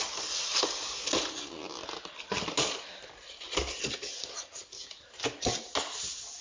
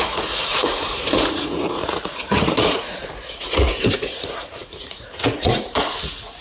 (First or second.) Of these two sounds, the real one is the first